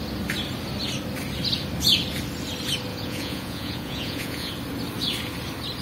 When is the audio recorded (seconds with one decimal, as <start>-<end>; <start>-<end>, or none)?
0.0-2.9; 4.5-5.8